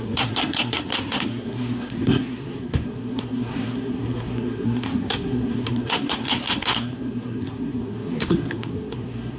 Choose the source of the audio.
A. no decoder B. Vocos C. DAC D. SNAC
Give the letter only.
D